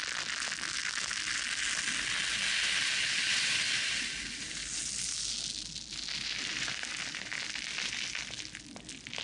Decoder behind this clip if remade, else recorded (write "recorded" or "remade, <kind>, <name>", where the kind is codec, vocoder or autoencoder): recorded